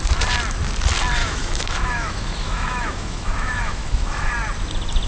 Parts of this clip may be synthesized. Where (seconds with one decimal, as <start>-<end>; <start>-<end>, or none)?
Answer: 1.2-4.3